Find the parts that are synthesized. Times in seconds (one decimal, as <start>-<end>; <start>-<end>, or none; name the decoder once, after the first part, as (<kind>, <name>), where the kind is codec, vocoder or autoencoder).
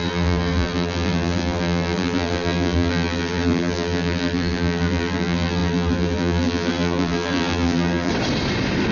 0.0-8.1 (vocoder, BigVGAN v2)